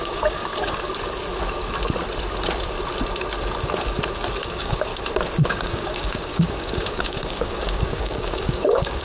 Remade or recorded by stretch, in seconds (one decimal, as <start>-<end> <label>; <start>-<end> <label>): 0.0-0.5 remade; 0.5-4.4 recorded; 4.4-4.9 remade; 4.9-5.5 recorded; 5.5-9.0 remade